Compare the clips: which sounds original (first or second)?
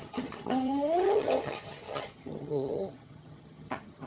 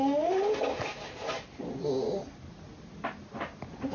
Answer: second